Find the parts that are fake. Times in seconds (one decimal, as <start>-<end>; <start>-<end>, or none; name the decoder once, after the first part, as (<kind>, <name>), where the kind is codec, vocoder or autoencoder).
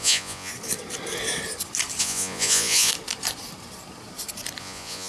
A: 0.0-0.5 (vocoder, Vocos); 2.0-2.9; 4.6-5.1